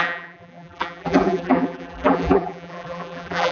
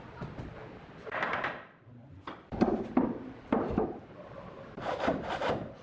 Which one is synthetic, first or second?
first